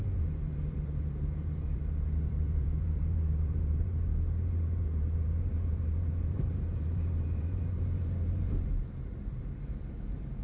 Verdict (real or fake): fake